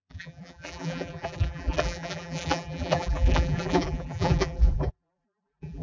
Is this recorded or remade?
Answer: remade